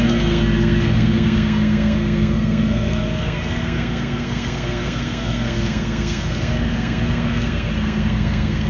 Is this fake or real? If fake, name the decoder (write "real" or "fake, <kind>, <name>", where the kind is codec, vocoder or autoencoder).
fake, codec, SNAC